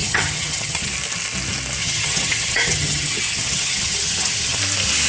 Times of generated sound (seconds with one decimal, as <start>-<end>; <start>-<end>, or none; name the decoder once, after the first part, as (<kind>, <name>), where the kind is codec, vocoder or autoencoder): 0.0-0.9 (vocoder, HiFi-GAN); 1.8-4.6